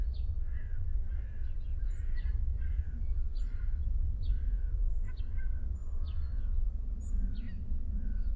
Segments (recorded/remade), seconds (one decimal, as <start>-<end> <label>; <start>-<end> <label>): 0.0-1.7 recorded; 1.7-5.2 remade; 5.2-5.8 recorded; 5.8-7.3 remade; 7.3-8.4 recorded